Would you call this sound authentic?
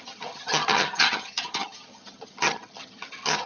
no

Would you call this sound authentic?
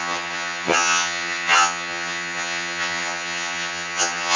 no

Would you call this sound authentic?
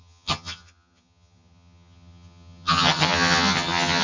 no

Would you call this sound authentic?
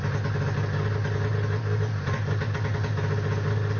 yes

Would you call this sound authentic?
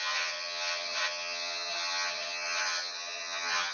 no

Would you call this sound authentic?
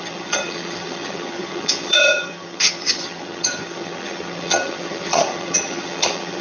no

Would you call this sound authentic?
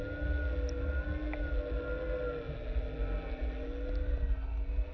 yes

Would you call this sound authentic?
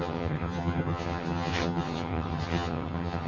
no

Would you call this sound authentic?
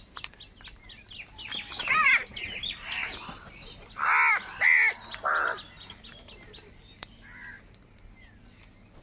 yes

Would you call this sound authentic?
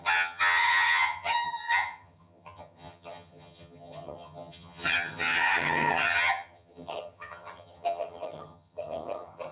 no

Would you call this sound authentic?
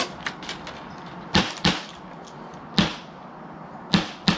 yes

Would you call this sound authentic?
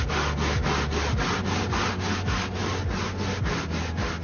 yes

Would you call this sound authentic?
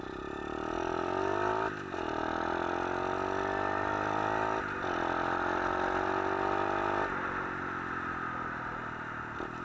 yes